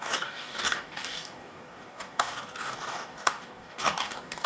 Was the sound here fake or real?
fake